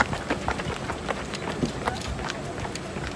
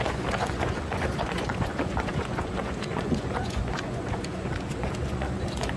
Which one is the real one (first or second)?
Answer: first